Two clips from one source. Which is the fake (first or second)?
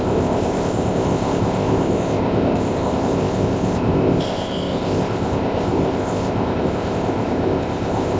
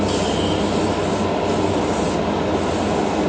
first